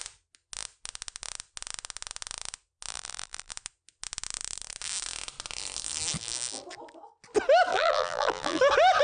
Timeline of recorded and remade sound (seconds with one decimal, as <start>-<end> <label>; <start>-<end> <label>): 0.0-2.9 recorded; 2.9-3.5 remade; 3.5-7.7 recorded; 7.7-8.6 remade; 8.6-9.0 recorded